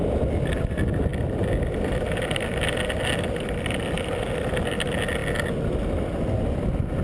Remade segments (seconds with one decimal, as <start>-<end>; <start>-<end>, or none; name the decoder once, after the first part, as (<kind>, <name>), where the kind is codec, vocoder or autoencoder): 1.1-4.3 (vocoder, BigVGAN v2)